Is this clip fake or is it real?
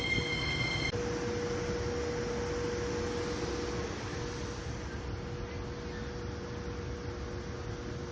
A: real